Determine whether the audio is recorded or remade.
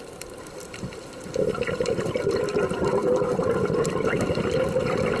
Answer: recorded